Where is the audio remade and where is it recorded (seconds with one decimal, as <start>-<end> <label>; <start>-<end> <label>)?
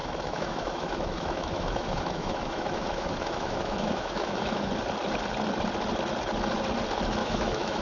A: 0.0-4.7 remade; 4.7-7.2 recorded; 7.2-7.8 remade